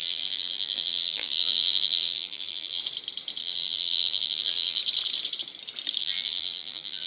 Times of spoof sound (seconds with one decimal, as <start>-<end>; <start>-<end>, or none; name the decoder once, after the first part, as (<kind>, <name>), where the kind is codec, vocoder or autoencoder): 0.0-2.8 (vocoder, BigVGAN v2); 3.4-4.8; 6.0-7.1